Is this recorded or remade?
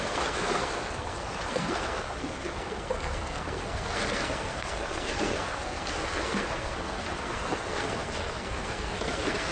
remade